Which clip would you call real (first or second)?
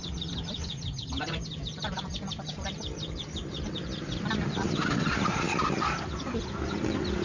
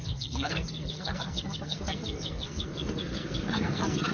first